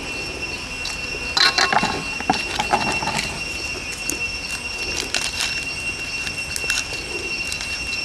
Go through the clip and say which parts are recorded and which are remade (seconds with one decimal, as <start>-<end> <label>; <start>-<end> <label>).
0.0-8.0 recorded